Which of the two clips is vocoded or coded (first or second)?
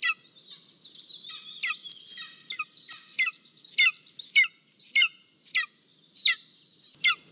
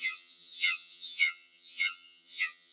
second